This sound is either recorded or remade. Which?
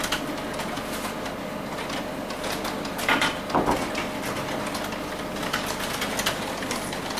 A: recorded